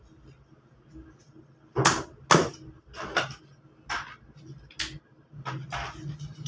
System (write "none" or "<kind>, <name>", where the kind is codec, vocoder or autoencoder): none